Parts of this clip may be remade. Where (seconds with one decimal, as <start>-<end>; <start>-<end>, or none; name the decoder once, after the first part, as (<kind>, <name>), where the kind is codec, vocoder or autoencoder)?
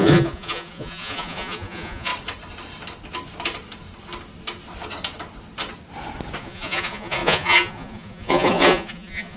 0.0-2.1 (vocoder, Vocos); 6.4-9.4